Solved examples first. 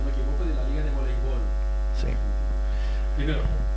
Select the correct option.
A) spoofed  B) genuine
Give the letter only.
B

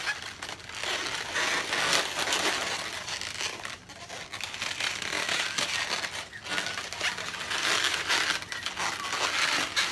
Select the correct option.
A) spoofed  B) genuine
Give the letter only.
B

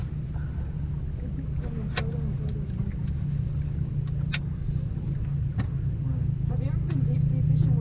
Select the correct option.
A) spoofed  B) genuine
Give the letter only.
B